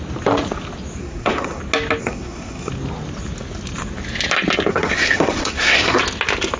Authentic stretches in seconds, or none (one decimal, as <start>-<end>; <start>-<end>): 0.0-1.0; 1.6-2.0; 2.7-4.7; 6.0-6.6